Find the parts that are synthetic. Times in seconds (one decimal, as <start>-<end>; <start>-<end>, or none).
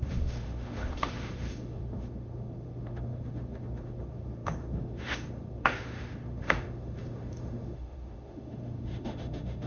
0.0-9.7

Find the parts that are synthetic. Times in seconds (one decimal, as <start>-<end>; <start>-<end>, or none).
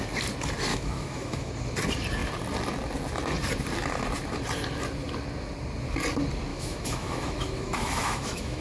0.7-1.5; 6.5-8.6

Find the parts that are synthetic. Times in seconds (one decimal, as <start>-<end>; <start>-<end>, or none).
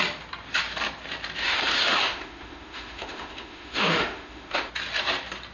1.4-4.7